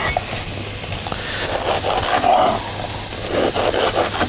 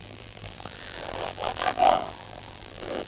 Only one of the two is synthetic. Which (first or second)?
second